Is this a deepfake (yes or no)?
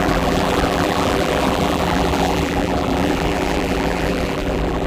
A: yes